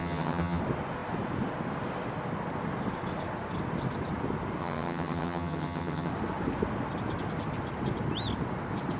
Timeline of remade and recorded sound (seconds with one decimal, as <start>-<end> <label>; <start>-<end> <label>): 0.0-0.6 remade; 0.6-4.6 recorded; 4.6-6.1 remade; 6.1-9.0 recorded